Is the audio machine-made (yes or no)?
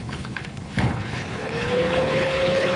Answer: yes